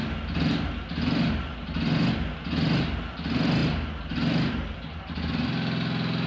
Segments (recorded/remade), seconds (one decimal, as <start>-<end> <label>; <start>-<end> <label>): 0.0-3.6 recorded; 3.6-5.0 remade; 5.0-6.3 recorded